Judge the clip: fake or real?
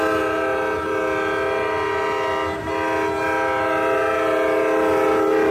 real